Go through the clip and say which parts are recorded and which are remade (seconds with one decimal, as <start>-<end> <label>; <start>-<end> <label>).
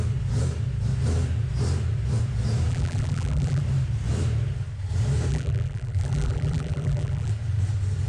0.0-2.7 recorded; 2.7-3.6 remade; 3.6-5.3 recorded; 5.3-7.3 remade; 7.3-8.1 recorded